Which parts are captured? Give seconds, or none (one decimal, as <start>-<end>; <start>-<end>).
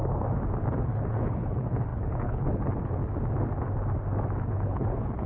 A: 0.0-0.8; 3.0-4.5